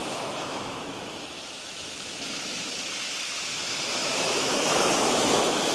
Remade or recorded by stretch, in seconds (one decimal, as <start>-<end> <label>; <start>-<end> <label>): 0.0-3.4 remade; 3.4-4.0 recorded; 4.0-5.7 remade